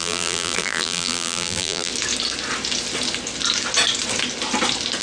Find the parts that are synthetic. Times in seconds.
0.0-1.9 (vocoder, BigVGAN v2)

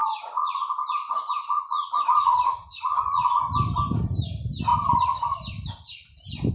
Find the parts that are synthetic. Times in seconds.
0.0-0.6 (vocoder, Vocos); 1.0-3.4

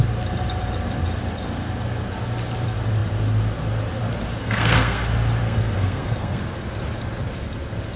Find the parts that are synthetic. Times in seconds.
4.4-5.0 (codec, SNAC); 5.4-6.4